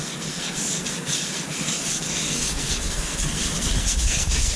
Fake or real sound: fake